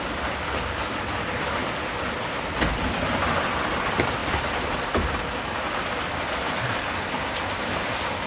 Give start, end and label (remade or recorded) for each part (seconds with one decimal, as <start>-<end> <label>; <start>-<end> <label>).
0.0-4.2 recorded; 4.2-4.8 remade; 4.8-8.3 recorded

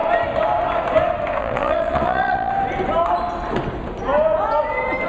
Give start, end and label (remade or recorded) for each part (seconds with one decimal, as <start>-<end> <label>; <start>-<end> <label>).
0.0-1.4 recorded; 1.4-2.5 remade; 2.5-5.1 recorded

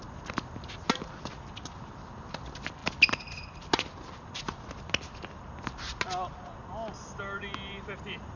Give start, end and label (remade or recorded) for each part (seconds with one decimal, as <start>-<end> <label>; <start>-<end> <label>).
0.0-8.4 recorded

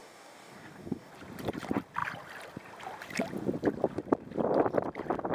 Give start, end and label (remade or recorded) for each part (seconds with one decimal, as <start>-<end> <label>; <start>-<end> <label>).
0.0-1.1 remade; 1.1-5.3 recorded

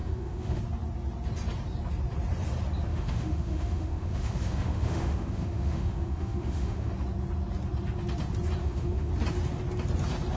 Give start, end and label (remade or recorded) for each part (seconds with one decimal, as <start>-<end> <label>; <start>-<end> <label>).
0.0-0.6 remade; 0.6-2.9 recorded; 2.9-6.9 remade; 6.9-8.6 recorded; 8.6-9.1 remade; 9.1-10.4 recorded

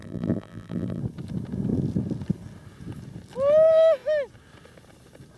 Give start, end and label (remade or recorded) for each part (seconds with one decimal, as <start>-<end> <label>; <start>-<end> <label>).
0.0-1.0 remade; 1.0-5.4 recorded